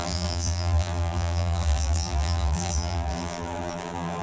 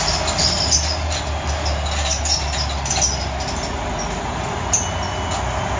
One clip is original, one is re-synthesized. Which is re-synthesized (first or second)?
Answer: first